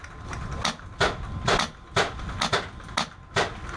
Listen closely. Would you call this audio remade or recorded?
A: recorded